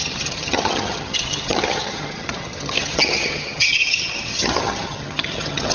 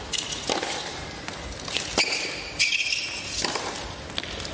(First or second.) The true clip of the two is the second